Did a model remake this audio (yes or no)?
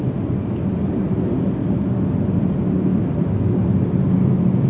no